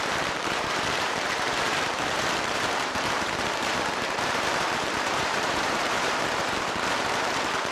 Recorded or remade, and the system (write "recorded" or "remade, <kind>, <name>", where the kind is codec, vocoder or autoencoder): remade, vocoder, BigVGAN v2